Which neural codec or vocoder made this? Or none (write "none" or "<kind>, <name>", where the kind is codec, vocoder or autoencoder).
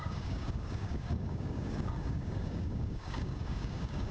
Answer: codec, DAC